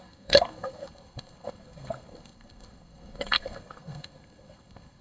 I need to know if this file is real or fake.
fake